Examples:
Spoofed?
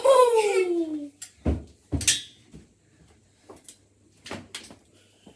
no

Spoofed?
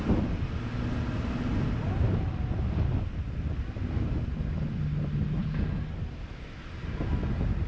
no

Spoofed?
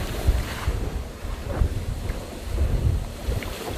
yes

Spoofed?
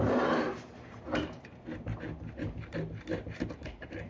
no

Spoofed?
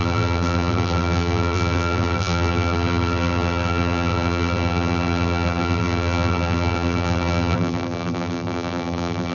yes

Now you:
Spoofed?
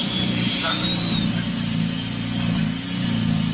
yes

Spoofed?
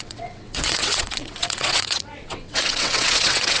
yes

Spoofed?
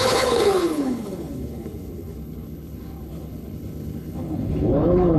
yes